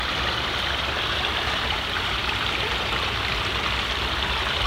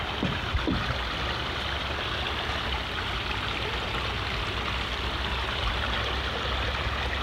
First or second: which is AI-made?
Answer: first